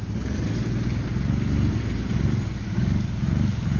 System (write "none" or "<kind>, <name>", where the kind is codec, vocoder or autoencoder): none